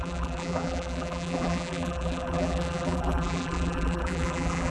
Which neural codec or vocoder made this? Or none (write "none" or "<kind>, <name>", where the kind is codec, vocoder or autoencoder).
vocoder, BigVGAN v2